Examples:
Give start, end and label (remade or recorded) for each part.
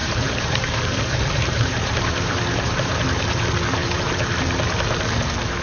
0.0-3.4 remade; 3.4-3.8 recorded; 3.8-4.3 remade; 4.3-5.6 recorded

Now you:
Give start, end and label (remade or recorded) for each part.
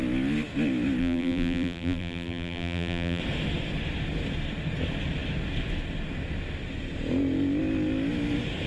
0.0-1.0 recorded; 1.0-3.2 remade; 3.2-8.7 recorded